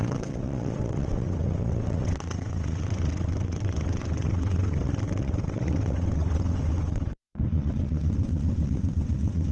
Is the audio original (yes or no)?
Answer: no